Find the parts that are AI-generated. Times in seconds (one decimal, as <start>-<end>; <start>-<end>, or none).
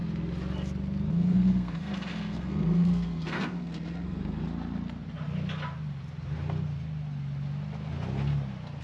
1.1-4.4